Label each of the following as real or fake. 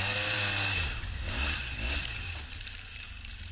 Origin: fake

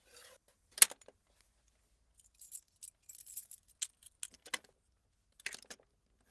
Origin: real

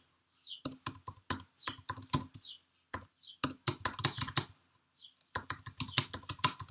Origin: real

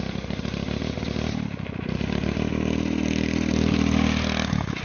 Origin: real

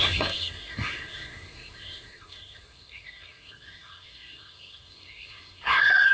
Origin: fake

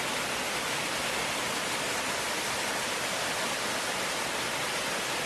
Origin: real